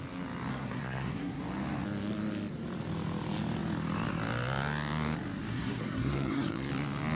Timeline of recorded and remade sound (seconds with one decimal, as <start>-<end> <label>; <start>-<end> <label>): 0.0-0.5 recorded; 0.5-1.4 remade; 1.4-5.5 recorded; 5.5-6.7 remade; 6.7-7.2 recorded